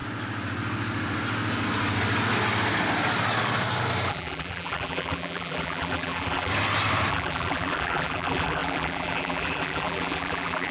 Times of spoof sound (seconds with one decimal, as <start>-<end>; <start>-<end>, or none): 4.1-6.5; 7.1-10.7